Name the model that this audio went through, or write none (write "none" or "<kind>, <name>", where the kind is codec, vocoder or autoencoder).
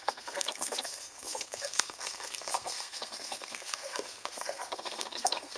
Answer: codec, SNAC